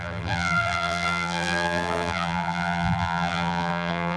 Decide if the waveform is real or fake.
fake